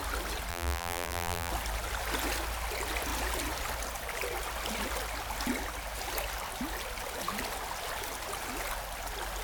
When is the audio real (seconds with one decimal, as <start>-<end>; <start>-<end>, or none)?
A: 0.0-0.5; 1.5-9.4